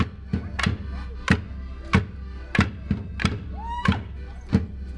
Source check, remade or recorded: recorded